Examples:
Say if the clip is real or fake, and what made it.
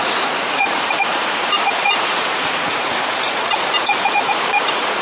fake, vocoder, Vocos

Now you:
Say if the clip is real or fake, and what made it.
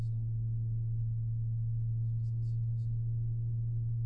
real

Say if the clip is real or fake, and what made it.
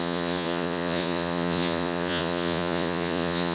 fake, vocoder, Vocos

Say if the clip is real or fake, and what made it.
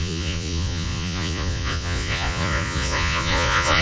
fake, vocoder, Vocos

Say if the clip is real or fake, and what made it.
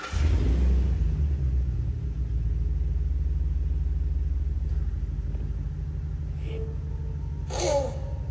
real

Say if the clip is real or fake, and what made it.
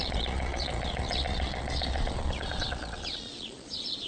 fake, vocoder, Vocos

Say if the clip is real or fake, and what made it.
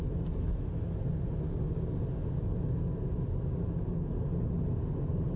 real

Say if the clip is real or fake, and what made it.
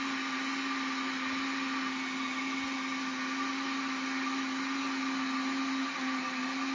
real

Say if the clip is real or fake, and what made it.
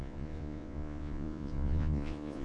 fake, vocoder, Vocos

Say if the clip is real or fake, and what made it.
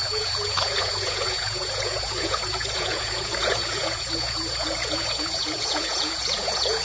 fake, vocoder, Vocos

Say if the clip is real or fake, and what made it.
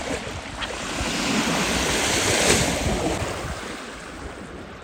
real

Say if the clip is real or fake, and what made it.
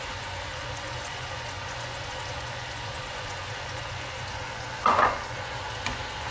fake, vocoder, Vocos